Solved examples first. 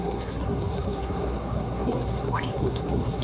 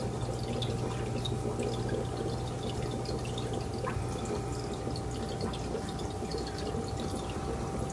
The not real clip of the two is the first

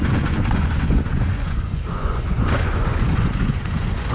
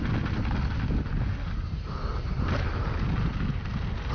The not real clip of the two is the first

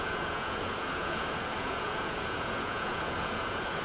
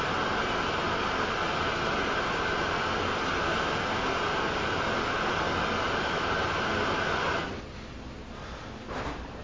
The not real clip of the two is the first